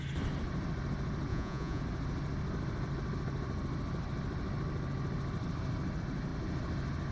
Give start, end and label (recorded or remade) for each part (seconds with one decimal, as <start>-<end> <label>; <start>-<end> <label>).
0.0-1.3 recorded; 1.3-1.8 remade; 1.8-7.1 recorded